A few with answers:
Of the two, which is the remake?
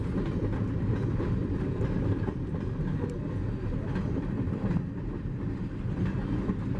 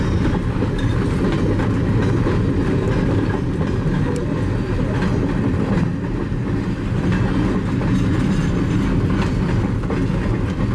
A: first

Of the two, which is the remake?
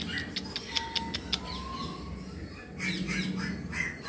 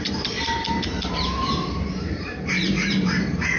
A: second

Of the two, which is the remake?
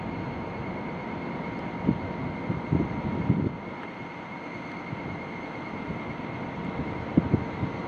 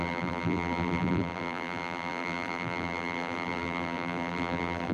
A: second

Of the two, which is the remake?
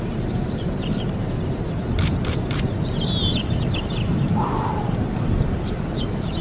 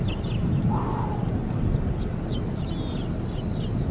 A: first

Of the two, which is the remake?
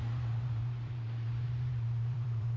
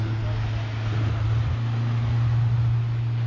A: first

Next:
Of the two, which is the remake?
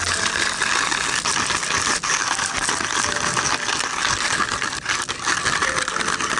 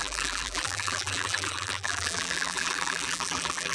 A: second